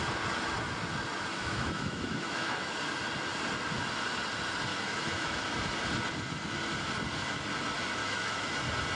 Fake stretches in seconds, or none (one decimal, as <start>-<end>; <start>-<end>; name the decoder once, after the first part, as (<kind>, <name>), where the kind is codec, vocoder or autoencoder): 1.3-2.7 (autoencoder, DAC-VAE); 4.7-5.4; 8.0-8.5